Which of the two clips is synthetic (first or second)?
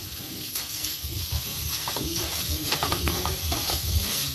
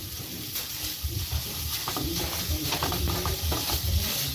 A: first